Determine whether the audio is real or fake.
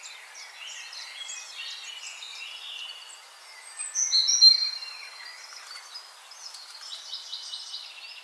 real